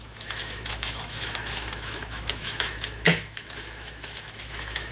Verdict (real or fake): fake